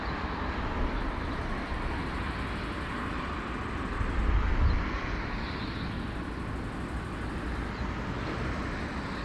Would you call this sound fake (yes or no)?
no